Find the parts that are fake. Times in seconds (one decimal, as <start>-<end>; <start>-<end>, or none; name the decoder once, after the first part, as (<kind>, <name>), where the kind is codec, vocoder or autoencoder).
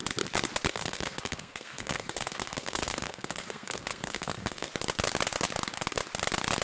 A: 0.7-4.7 (codec, SNAC)